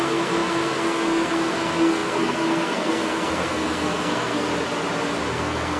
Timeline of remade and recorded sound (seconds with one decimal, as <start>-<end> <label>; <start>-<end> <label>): 0.0-4.5 remade; 4.5-5.3 recorded; 5.3-5.8 remade